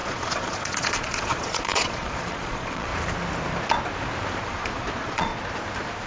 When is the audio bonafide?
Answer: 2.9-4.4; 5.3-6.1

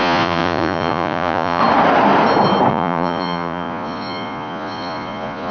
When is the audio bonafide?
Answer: 1.6-2.7

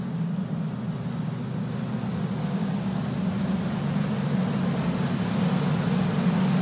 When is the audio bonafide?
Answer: 0.0-6.6

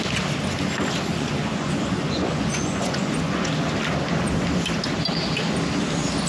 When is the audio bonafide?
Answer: 0.0-1.1; 3.5-6.3